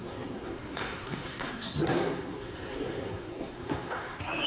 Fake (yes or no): yes